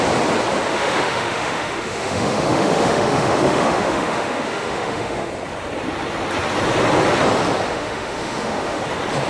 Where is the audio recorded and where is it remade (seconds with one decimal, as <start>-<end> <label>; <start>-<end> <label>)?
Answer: 0.0-0.7 recorded; 0.7-5.3 remade; 5.3-7.7 recorded; 7.7-8.8 remade; 8.8-9.3 recorded